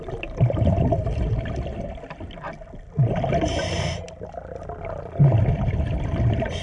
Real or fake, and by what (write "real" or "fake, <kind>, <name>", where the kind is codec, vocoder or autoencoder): real